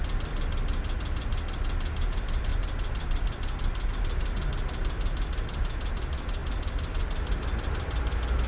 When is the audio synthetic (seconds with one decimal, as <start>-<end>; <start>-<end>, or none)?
2.5-3.9